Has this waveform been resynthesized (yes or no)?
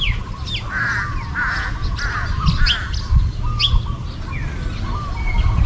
no